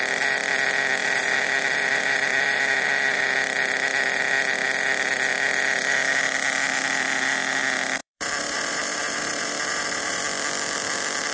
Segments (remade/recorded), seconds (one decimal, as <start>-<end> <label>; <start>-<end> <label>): 0.0-1.0 recorded; 1.0-3.2 remade; 3.2-8.0 recorded; 8.0-10.2 remade; 10.2-11.3 recorded